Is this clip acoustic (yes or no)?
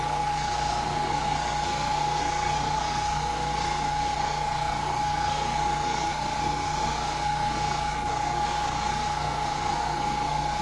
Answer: no